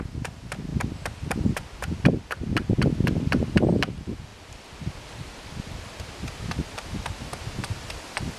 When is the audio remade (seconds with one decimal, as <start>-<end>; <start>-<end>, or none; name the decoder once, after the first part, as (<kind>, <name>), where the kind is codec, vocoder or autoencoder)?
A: none